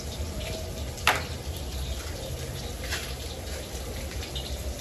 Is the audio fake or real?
fake